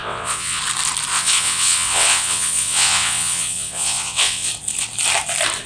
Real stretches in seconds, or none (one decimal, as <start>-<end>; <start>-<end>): 0.6-1.1; 4.5-5.7